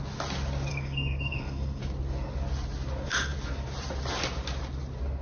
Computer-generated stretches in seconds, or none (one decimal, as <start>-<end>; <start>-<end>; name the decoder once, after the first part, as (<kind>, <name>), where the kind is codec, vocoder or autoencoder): 0.7-1.8 (codec, SNAC)